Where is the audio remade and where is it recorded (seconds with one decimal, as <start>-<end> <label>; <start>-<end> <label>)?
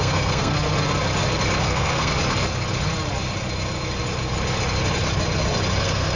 0.0-0.5 remade; 0.5-1.6 recorded; 1.6-2.1 remade; 2.1-5.8 recorded; 5.8-6.2 remade